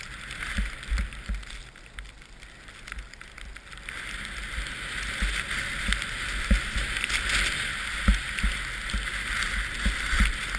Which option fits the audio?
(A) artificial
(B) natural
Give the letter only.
B